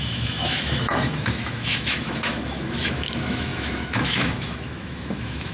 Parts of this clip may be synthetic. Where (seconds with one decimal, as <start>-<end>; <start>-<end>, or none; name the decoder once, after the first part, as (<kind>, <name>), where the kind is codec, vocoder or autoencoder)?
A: 0.0-5.5 (autoencoder, DAC-VAE)

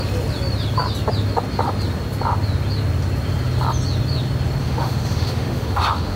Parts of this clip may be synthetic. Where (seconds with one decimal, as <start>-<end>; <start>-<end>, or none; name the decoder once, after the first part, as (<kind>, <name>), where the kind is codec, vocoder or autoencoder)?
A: 4.6-6.2 (autoencoder, DAC-VAE)